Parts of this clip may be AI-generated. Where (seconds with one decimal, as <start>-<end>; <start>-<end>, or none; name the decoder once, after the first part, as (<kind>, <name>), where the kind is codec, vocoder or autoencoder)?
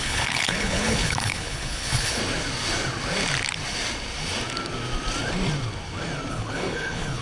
0.0-2.2 (codec, HILCodec); 6.3-7.2